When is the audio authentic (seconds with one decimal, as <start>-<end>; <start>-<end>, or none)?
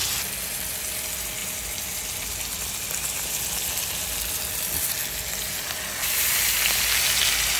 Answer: 0.0-7.6